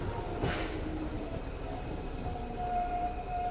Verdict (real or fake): real